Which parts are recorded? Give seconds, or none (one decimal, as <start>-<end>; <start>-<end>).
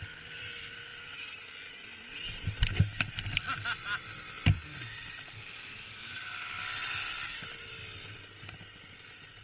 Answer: 0.0-9.4